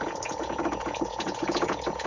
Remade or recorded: remade